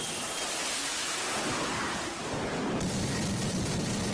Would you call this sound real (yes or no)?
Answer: no